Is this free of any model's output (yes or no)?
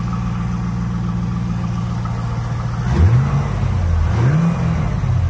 yes